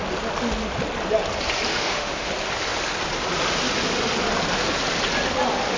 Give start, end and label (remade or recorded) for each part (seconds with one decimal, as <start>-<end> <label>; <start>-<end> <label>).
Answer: 0.0-1.7 recorded; 1.7-2.3 remade; 2.3-5.8 recorded